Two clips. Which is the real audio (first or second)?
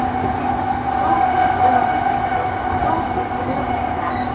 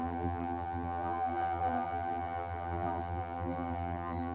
first